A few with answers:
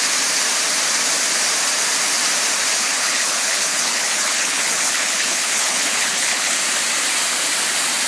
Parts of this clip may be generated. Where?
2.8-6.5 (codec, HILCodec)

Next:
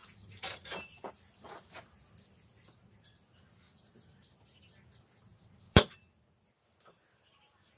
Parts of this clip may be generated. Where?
0.0-1.0 (vocoder, BigVGAN v2); 5.3-6.0

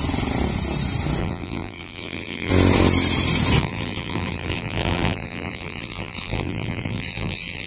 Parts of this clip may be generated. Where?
1.2-2.5 (vocoder, BigVGAN v2); 3.6-7.7

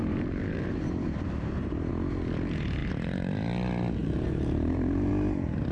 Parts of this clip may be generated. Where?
0.0-1.9 (vocoder, BigVGAN v2); 2.8-3.3; 4.0-5.1

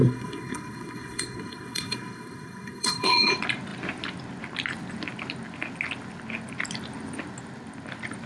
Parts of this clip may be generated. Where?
0.0-3.3 (codec, SNAC)